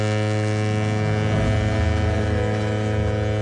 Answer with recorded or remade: recorded